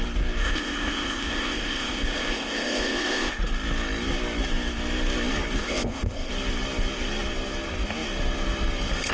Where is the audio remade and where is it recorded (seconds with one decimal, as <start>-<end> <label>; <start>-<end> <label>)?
0.0-0.4 recorded; 0.4-3.4 remade; 3.4-5.6 recorded; 5.6-6.3 remade; 6.3-9.1 recorded